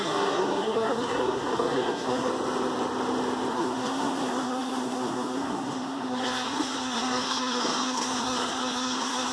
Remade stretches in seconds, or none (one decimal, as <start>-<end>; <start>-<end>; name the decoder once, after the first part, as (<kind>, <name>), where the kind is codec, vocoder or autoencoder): 0.0-2.3 (codec, SNAC); 3.5-9.3